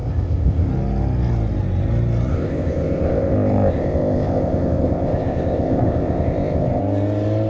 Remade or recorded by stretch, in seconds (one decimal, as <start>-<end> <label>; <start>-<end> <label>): 0.0-0.7 remade; 0.7-2.3 recorded; 2.3-6.8 remade; 6.8-7.5 recorded

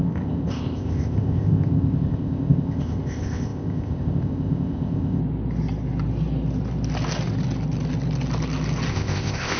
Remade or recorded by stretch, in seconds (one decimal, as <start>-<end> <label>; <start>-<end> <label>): 0.0-5.2 remade; 5.2-8.9 recorded; 8.9-9.6 remade

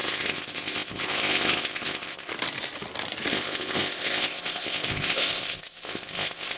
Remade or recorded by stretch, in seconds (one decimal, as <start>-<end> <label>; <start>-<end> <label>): 0.0-2.3 remade; 2.3-3.3 recorded; 3.3-6.6 remade